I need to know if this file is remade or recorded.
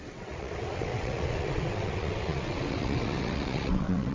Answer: remade